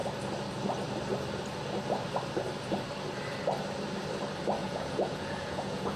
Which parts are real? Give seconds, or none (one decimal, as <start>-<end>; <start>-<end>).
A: 0.0-4.6